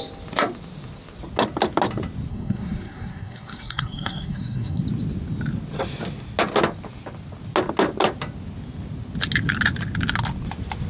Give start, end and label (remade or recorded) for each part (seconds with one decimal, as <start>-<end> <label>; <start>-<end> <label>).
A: 0.0-2.3 recorded; 2.3-4.8 remade; 4.8-10.9 recorded